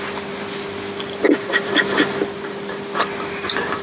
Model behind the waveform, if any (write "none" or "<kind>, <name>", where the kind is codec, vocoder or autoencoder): none